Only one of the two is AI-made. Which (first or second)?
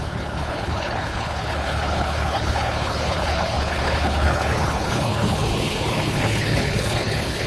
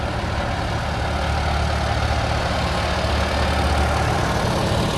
first